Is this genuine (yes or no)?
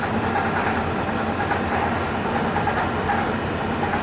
yes